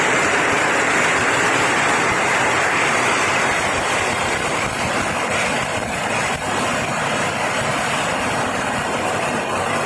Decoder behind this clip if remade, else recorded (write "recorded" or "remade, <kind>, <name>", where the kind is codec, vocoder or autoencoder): remade, vocoder, BigVGAN v2